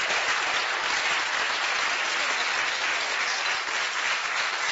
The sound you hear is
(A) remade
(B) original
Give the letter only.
B